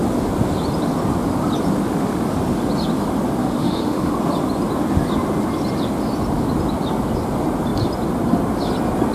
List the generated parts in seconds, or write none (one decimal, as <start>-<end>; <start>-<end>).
3.4-4.1